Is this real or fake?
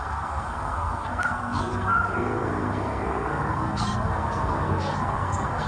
fake